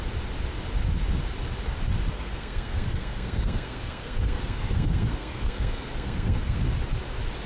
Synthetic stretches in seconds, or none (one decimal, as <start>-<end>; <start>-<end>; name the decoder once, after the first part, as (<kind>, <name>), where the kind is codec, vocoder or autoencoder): 2.1-6.6 (codec, SNAC)